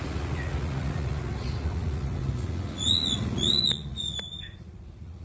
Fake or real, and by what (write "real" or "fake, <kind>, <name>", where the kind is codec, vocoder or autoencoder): fake, vocoder, Vocos